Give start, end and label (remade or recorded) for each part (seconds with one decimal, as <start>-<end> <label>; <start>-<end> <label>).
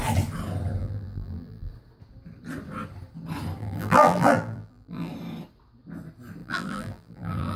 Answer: 0.0-0.8 recorded; 0.8-1.7 remade; 1.7-3.6 recorded; 3.6-5.1 remade; 5.1-6.4 recorded; 6.4-7.6 remade